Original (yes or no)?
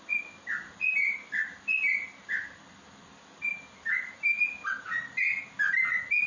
yes